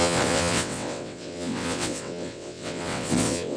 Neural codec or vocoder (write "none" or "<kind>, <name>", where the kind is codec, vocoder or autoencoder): vocoder, WaveNeXt